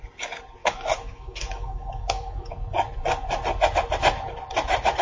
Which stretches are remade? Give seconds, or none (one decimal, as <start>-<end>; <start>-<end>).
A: 0.6-2.5